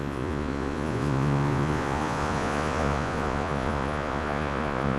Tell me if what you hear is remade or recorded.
remade